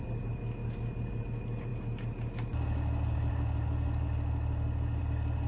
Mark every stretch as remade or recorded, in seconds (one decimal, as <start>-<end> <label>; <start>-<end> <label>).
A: 0.0-5.5 recorded